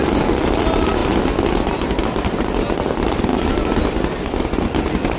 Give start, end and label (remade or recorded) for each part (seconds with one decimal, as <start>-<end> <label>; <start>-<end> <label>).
0.0-5.2 recorded